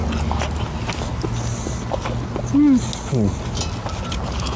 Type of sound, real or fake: real